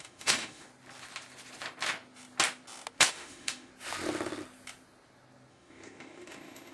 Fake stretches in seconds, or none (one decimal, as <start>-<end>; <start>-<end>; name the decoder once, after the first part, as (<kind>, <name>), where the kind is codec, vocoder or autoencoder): 0.0-0.7 (autoencoder, DAC-VAE); 3.1-3.7; 5.5-6.7